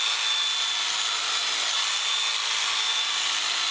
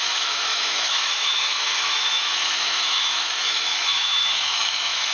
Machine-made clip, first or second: second